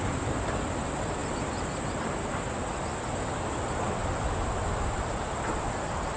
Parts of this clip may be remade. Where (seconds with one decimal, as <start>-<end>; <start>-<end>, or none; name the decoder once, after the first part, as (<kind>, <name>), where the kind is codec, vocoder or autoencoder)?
none